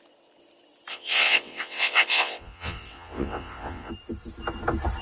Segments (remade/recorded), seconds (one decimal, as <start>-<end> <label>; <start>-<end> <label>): 0.0-0.9 recorded; 0.9-3.9 remade; 3.9-5.0 recorded